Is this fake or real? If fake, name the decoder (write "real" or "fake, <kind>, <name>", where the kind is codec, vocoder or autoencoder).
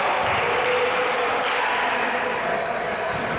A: real